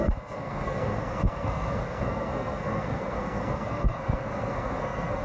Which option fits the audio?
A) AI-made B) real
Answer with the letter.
A